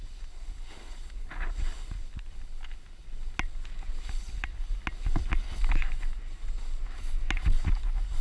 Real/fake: real